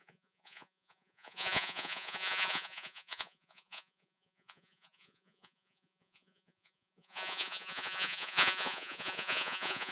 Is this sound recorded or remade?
remade